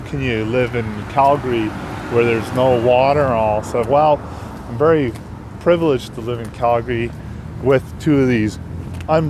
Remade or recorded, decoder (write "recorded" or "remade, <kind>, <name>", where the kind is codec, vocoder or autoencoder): recorded